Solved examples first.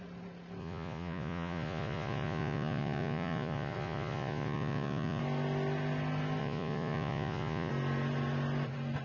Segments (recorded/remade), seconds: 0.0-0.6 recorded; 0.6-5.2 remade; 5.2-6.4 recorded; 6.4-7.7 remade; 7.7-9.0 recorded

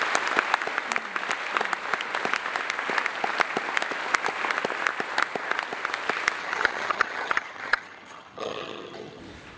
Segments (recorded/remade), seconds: 0.0-6.4 recorded; 6.4-9.2 remade; 9.2-9.6 recorded

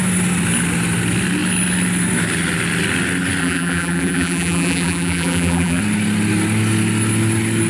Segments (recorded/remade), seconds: 0.0-3.4 recorded; 3.4-5.8 remade; 5.8-7.7 recorded

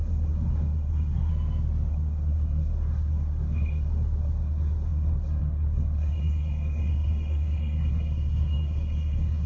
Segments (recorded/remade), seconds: 0.0-1.3 remade; 1.3-1.9 recorded; 1.9-9.5 remade

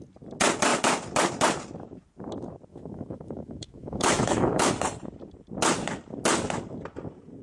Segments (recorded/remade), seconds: 0.0-2.7 recorded; 2.7-4.7 remade; 4.7-7.4 recorded

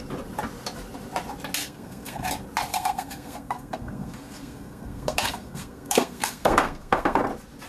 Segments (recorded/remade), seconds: 0.0-1.6 recorded; 1.6-2.3 remade; 2.3-2.7 recorded; 2.7-7.2 remade; 7.2-7.7 recorded

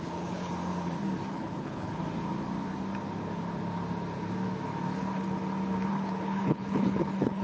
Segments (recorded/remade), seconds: 0.0-0.5 remade; 0.5-1.3 recorded; 1.3-2.0 remade; 2.0-5.9 recorded; 5.9-7.4 remade

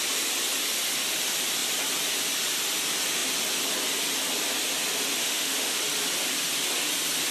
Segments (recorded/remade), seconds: 0.0-5.2 recorded; 5.2-5.8 remade; 5.8-7.3 recorded